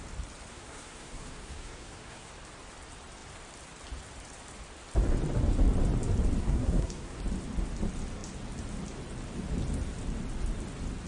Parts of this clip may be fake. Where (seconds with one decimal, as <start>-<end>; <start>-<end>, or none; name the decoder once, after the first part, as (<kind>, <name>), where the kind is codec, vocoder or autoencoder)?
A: 0.5-2.3 (codec, SNAC); 6.4-7.2